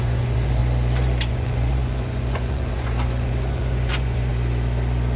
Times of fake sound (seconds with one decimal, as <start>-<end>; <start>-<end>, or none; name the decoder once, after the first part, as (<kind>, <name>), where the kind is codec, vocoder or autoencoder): 0.0-0.6 (vocoder, Vocos); 1.3-4.3